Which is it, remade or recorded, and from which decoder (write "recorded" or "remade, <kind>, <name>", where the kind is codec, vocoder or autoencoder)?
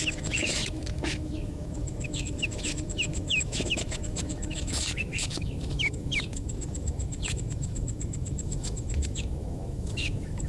remade, autoencoder, DAC-VAE